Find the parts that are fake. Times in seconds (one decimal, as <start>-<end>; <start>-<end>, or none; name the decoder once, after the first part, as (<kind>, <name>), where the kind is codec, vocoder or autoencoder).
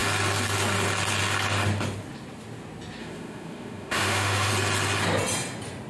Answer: 3.0-4.5 (autoencoder, DAC-VAE)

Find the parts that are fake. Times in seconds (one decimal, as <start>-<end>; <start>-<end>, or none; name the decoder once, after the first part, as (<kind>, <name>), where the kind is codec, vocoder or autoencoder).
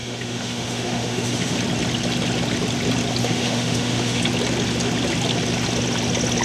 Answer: 0.0-1.6 (autoencoder, DAC-VAE); 3.2-4.2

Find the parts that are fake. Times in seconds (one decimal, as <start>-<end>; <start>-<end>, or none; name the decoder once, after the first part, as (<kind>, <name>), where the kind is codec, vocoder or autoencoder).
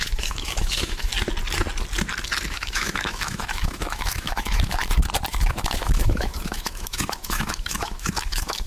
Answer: 0.0-1.1 (autoencoder, DAC-VAE); 2.5-4.8; 5.3-8.7